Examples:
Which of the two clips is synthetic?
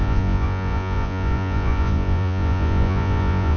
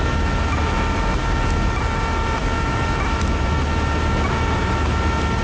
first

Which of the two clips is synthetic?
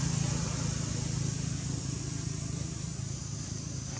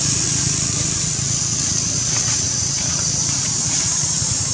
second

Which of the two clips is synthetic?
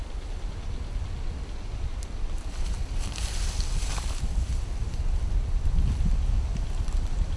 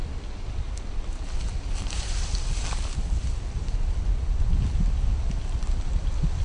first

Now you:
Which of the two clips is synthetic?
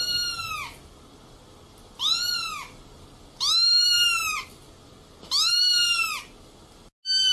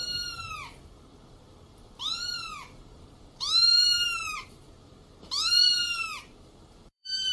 second